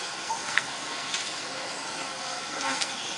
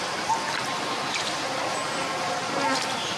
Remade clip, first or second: first